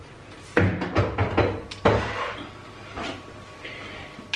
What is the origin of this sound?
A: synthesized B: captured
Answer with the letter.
B